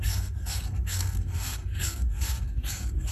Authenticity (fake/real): fake